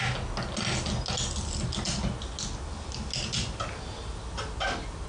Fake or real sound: real